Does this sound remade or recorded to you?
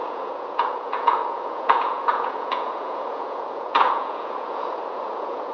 remade